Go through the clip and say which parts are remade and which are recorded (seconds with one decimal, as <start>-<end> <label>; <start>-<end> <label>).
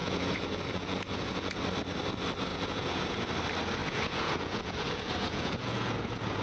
0.0-1.6 remade; 1.6-2.5 recorded; 2.5-3.3 remade; 3.3-3.8 recorded; 3.8-6.4 remade